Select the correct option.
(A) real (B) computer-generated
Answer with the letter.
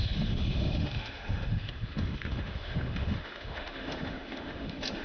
B